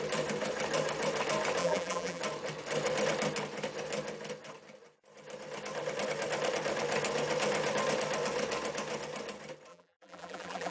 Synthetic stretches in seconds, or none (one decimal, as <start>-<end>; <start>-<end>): 1.6-2.2; 9.7-10.7